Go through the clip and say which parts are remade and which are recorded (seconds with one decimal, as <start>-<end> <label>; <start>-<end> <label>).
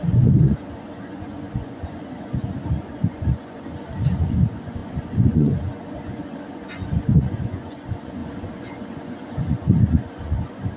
0.0-10.8 remade